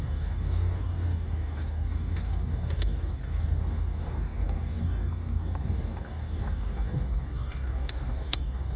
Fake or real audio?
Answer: fake